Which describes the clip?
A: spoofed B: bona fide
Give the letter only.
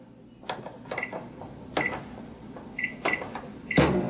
B